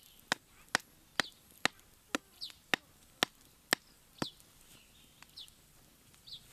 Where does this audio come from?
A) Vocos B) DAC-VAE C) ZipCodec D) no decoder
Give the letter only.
D